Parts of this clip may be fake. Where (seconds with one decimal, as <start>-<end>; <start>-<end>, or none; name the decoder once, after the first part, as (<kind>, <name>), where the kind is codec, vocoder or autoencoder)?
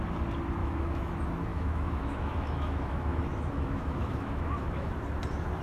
0.6-1.1 (autoencoder, DAC-VAE); 1.5-4.9